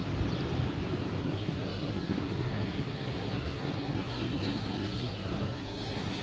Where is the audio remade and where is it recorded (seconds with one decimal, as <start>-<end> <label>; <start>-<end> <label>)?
0.0-1.2 recorded; 1.2-6.2 remade